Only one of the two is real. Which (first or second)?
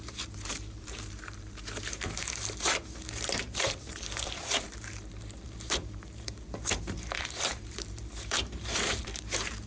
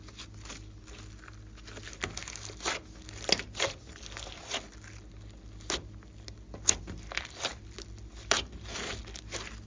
second